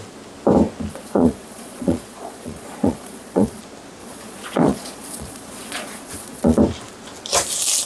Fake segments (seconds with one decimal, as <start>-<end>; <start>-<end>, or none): 0.9-3.6; 4.0-6.6